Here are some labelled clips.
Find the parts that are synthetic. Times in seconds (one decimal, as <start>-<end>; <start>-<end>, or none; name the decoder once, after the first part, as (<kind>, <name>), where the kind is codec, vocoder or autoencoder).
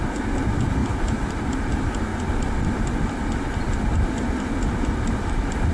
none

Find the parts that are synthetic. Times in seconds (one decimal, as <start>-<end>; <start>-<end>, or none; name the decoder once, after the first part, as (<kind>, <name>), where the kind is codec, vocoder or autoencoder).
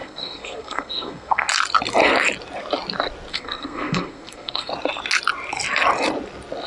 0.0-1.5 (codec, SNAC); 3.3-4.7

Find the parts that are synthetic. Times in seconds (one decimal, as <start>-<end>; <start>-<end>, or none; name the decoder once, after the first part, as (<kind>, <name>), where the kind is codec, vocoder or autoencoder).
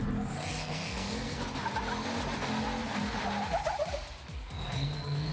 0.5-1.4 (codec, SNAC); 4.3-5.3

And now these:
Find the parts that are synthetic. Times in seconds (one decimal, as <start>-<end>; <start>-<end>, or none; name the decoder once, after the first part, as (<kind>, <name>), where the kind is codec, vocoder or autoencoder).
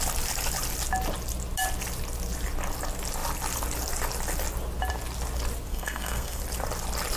5.7-6.4 (codec, SNAC)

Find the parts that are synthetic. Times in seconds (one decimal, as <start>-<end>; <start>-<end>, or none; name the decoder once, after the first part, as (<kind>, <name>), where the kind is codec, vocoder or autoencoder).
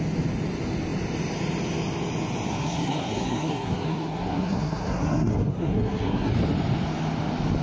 2.5-6.3 (codec, SNAC)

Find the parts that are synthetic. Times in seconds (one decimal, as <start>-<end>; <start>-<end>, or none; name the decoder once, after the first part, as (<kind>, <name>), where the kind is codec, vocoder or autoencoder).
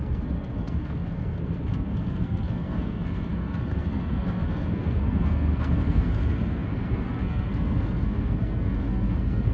0.0-9.5 (codec, SNAC)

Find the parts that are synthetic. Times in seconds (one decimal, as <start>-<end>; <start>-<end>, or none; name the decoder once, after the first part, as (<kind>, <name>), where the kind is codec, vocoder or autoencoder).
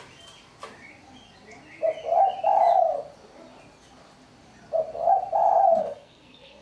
5.8-6.6 (codec, SNAC)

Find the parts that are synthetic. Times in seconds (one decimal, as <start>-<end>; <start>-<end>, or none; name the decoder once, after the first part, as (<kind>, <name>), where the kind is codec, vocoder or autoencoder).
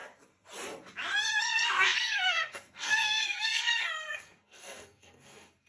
1.4-5.7 (codec, SNAC)